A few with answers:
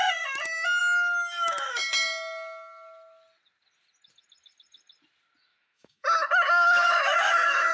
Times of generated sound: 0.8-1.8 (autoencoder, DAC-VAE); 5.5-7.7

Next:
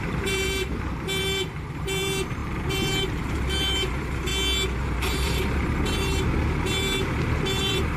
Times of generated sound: 0.0-4.3 (vocoder, BigVGAN v2); 4.8-6.1; 7.6-8.0

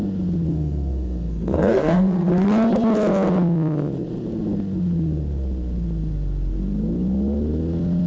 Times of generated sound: 0.5-2.3 (codec, SNAC)

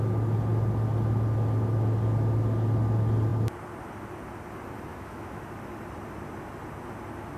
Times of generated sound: 4.9-5.4 (autoencoder, DAC-VAE)

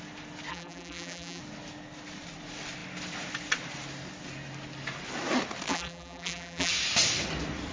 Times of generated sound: 0.5-1.4 (vocoder, BigVGAN v2); 5.7-6.7

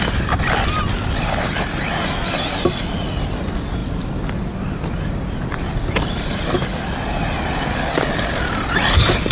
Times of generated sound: none

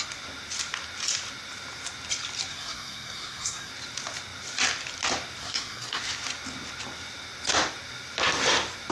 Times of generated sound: 2.5-3.7 (codec, SNAC); 5.4-6.0

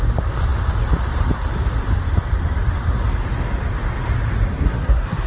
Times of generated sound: 4.5-5.3 (codec, SNAC)